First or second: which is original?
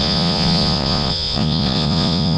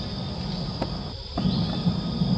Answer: second